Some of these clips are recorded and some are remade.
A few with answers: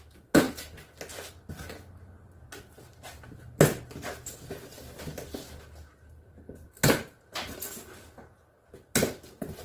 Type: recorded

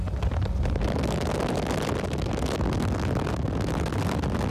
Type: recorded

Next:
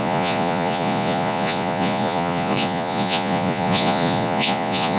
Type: remade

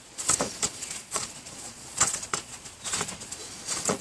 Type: remade